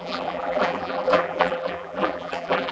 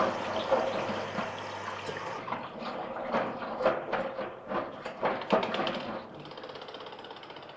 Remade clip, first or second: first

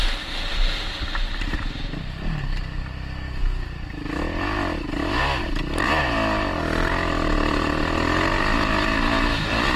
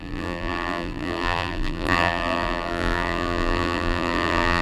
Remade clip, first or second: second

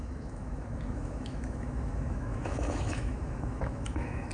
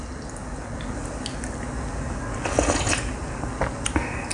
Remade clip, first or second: first